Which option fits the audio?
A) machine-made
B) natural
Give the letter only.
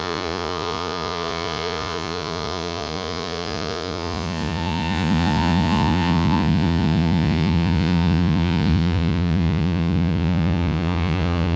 A